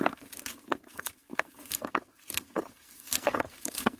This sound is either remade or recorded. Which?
remade